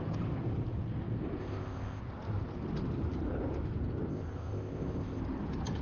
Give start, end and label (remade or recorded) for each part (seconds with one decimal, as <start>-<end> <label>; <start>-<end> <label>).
0.0-1.4 recorded; 1.4-2.0 remade; 2.0-4.1 recorded; 4.1-5.2 remade; 5.2-5.8 recorded